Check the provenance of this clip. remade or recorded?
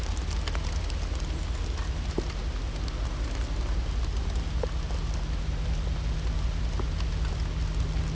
recorded